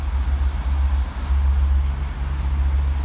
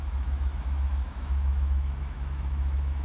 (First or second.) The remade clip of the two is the second